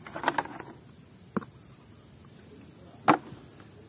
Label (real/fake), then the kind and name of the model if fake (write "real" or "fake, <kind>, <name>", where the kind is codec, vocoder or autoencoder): real